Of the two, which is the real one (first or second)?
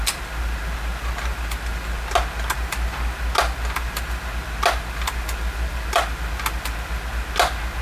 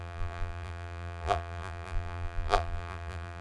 first